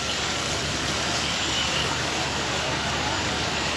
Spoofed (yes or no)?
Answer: yes